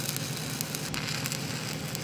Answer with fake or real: real